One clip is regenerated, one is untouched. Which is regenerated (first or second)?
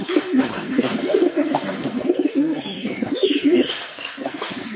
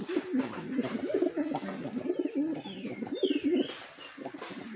first